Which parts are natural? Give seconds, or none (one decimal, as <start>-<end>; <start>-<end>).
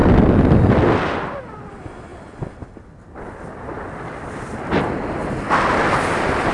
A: 0.0-6.5